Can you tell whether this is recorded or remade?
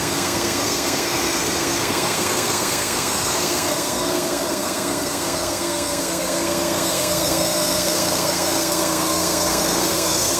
remade